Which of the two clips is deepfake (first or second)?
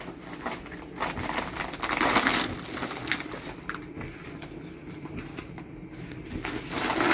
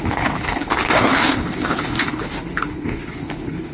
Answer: second